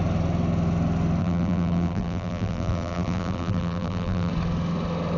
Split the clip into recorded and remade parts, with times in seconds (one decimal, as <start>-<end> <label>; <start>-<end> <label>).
0.0-1.2 recorded; 1.2-4.3 remade; 4.3-5.2 recorded